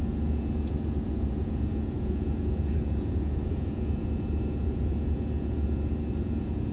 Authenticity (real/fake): fake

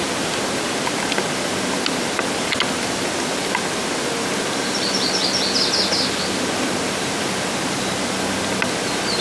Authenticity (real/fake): real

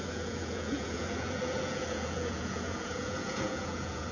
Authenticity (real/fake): fake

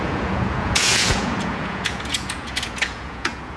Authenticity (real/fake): fake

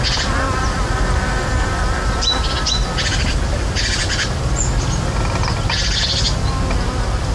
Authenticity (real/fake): real